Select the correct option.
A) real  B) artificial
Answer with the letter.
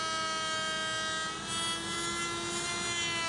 A